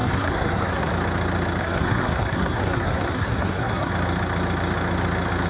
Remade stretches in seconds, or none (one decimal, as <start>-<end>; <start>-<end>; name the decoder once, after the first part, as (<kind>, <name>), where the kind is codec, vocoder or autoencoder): 0.0-0.9 (codec, SNAC); 1.6-3.9

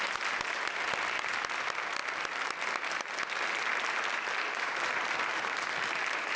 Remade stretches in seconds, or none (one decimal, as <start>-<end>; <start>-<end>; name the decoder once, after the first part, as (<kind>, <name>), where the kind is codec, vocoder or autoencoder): none

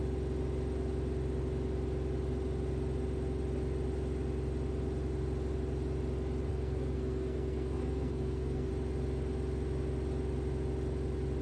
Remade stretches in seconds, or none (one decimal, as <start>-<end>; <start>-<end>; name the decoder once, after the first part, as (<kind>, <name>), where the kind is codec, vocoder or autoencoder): 6.5-8.7 (codec, SNAC)

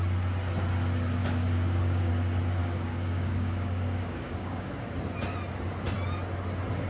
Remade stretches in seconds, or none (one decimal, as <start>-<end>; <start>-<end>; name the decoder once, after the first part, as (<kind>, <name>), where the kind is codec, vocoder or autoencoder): 1.2-2.1 (codec, DAC); 2.6-4.7

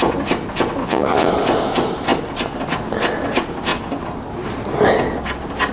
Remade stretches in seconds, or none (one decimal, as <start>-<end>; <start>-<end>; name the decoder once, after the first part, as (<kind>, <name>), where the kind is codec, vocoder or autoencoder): 0.8-1.3 (vocoder, Vocos)

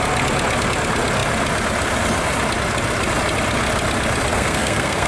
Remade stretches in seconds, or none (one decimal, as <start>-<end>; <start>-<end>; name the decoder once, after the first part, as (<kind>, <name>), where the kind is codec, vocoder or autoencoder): 4.3-5.1 (codec, SNAC)